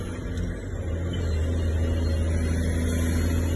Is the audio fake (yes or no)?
no